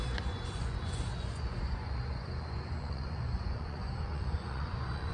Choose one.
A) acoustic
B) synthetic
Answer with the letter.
B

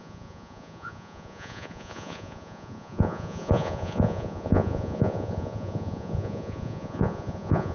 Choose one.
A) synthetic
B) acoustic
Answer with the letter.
A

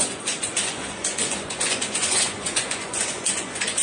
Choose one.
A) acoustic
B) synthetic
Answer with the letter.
B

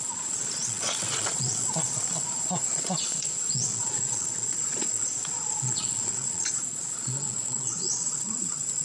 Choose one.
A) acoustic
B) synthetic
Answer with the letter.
B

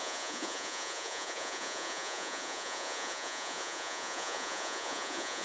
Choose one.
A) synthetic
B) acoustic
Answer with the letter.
A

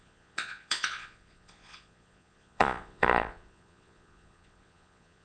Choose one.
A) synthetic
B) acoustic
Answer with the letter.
A